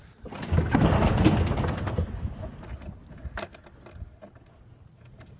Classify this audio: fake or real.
real